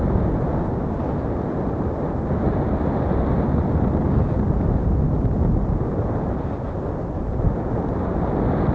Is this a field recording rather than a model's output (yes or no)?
yes